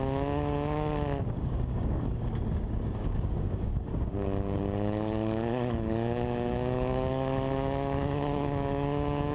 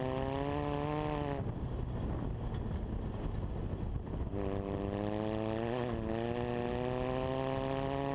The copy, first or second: first